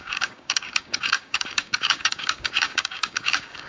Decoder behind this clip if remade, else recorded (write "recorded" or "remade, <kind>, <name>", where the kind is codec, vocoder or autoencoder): remade, codec, DAC